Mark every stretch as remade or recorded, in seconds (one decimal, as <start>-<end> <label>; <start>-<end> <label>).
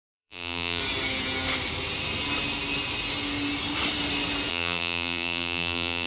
0.0-0.8 remade; 0.8-4.5 recorded; 4.5-6.1 remade